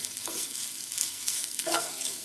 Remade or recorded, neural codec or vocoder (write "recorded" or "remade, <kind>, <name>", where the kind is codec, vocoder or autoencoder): remade, codec, SNAC